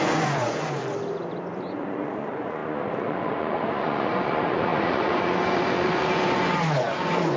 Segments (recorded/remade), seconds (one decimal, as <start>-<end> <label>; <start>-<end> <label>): 0.0-0.8 remade; 0.8-1.7 recorded; 1.7-7.4 remade